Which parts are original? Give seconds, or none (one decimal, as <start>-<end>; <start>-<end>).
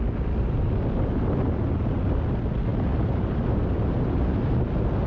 0.0-2.7; 4.6-5.1